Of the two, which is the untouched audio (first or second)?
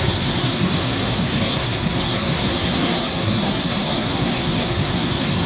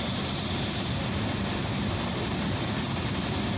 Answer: second